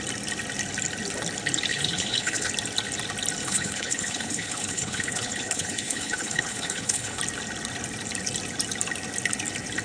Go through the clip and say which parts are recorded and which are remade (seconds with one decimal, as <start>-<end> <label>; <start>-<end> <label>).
0.0-1.7 recorded; 1.7-2.5 remade; 2.5-3.4 recorded; 3.4-7.2 remade; 7.2-9.8 recorded